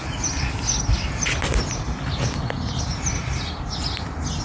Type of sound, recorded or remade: recorded